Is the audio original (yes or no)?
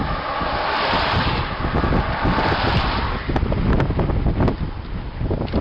yes